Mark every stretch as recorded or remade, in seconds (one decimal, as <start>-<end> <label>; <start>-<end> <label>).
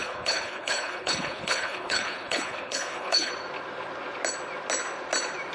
0.0-3.3 remade; 3.3-5.5 recorded